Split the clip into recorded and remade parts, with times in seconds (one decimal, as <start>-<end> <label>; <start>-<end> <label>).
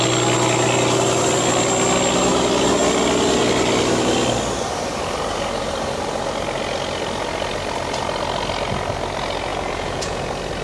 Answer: 0.0-9.5 recorded; 9.5-10.2 remade; 10.2-10.6 recorded